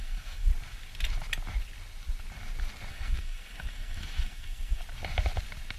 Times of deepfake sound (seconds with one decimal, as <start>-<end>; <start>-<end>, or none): 0.0-0.5; 2.9-4.8